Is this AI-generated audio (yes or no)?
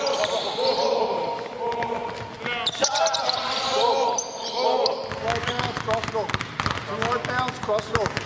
no